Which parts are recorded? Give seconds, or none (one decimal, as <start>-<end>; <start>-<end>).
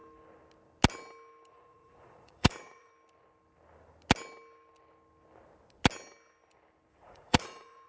0.0-1.5; 2.9-6.9